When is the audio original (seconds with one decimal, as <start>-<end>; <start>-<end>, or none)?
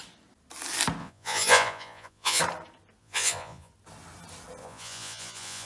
0.0-1.0; 2.4-3.0; 3.7-4.6